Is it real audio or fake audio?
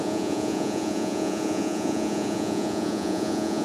fake